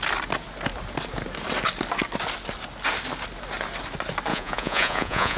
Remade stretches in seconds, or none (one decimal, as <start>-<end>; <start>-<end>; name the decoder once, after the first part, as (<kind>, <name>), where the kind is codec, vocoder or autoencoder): 4.3-5.4 (vocoder, Vocos)